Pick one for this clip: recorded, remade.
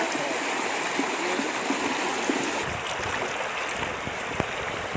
recorded